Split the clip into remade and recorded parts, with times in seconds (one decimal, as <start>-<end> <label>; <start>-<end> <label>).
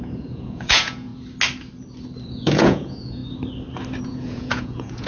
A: 0.0-1.1 remade; 1.1-2.3 recorded; 2.3-3.2 remade; 3.2-4.0 recorded; 4.0-5.1 remade